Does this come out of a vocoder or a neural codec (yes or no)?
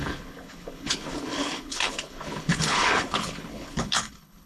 yes